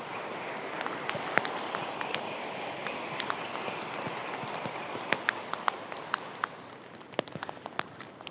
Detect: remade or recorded recorded